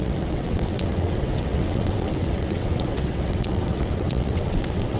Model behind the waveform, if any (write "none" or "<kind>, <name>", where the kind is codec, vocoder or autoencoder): vocoder, WaveNeXt